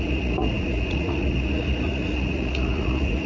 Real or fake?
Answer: fake